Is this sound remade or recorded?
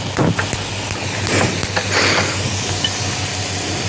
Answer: recorded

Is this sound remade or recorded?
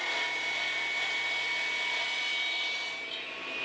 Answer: recorded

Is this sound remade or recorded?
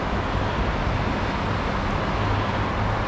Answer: recorded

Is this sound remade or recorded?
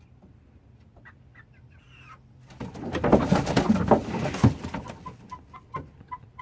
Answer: recorded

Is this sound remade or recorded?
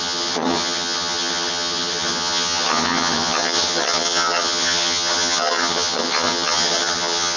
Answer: remade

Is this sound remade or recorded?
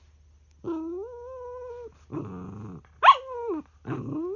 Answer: recorded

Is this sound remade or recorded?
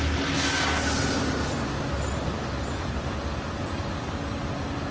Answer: recorded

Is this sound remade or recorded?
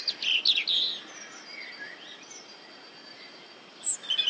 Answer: recorded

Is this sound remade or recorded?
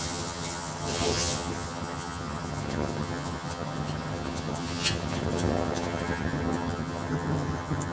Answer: remade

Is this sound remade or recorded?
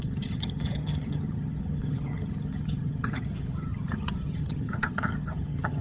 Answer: remade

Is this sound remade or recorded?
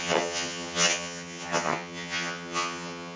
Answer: remade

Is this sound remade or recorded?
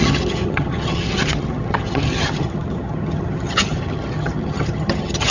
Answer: remade